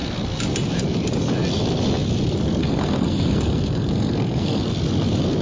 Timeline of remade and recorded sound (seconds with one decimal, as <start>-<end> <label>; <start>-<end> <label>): 0.0-2.6 recorded; 2.6-4.6 remade; 4.6-5.4 recorded